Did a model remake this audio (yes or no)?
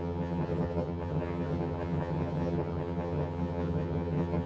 yes